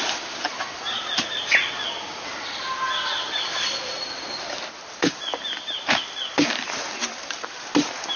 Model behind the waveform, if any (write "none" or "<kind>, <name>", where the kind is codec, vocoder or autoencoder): none